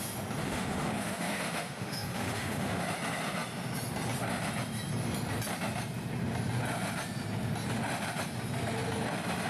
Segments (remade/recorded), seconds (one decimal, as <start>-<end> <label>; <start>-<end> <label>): 0.0-0.4 recorded; 0.4-2.8 remade; 2.8-9.5 recorded